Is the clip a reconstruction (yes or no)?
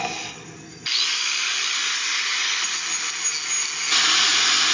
no